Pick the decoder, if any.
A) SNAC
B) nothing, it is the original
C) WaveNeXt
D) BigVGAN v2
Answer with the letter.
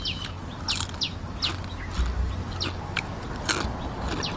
B